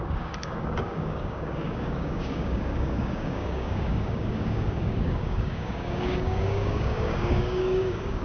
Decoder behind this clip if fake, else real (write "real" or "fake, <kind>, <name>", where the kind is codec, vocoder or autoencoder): fake, codec, DAC